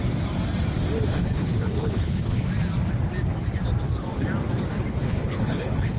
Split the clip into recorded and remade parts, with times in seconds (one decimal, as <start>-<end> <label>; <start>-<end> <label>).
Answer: 0.0-1.1 recorded; 1.1-2.5 remade; 2.5-4.9 recorded; 4.9-6.0 remade